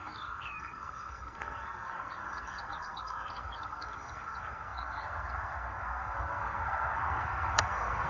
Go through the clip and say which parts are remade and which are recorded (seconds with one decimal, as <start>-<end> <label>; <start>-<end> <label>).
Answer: 0.0-8.1 remade